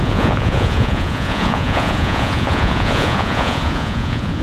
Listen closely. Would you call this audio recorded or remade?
remade